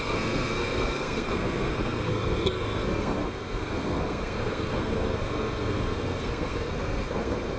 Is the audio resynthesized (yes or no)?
yes